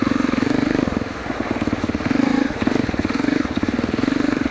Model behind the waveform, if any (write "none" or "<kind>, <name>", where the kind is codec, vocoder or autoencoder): autoencoder, DAC-VAE